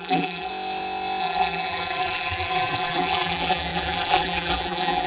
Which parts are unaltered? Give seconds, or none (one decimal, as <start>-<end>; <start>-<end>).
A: 0.5-1.2